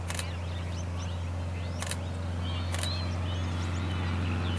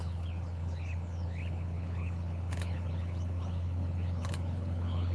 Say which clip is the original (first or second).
first